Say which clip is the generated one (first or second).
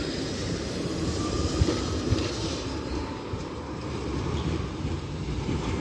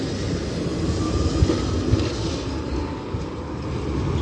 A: first